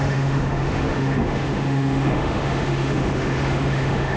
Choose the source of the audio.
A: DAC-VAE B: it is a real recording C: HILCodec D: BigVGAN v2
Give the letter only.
A